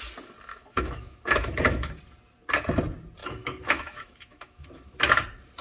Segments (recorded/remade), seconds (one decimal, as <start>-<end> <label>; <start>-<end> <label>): 0.0-0.5 recorded; 0.5-2.0 remade; 2.0-3.2 recorded; 3.2-5.0 remade; 5.0-5.6 recorded